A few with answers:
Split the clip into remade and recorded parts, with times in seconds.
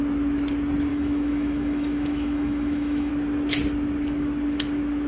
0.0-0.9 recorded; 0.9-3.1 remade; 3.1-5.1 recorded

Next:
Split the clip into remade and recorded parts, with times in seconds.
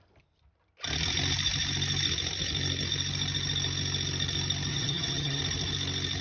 0.0-4.7 recorded; 4.7-5.4 remade; 5.4-6.2 recorded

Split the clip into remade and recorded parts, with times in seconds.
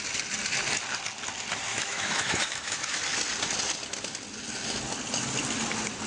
0.0-1.7 recorded; 1.7-3.0 remade; 3.0-6.1 recorded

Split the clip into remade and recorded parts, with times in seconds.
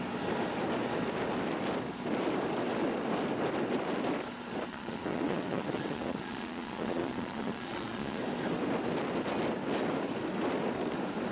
0.0-4.7 recorded; 4.7-8.2 remade; 8.2-11.3 recorded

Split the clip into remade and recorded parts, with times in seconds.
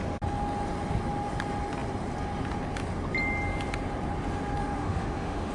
0.0-4.6 recorded; 4.6-5.5 remade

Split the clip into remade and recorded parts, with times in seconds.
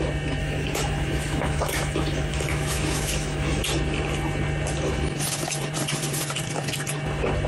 0.0-0.4 recorded; 0.4-3.6 remade; 3.6-7.5 recorded